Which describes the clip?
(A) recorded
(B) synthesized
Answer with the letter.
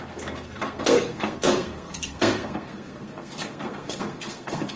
B